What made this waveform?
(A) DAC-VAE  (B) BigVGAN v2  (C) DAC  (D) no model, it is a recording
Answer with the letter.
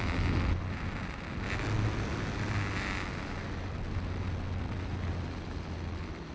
D